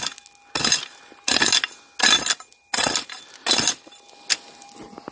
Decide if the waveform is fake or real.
real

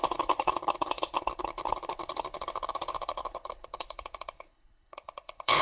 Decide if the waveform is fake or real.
fake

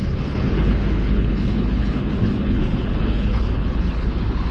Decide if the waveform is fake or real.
fake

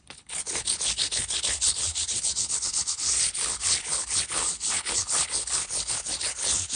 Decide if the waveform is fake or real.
fake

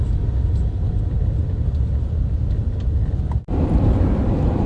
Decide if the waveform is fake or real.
real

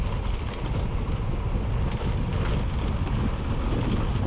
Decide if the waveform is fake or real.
real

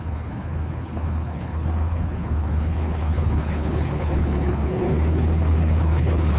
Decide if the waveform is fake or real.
fake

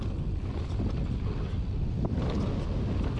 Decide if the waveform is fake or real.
real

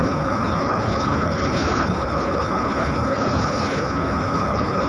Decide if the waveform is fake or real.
fake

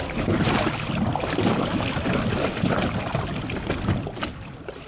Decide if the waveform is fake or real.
real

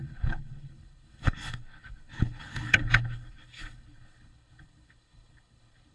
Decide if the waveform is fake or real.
fake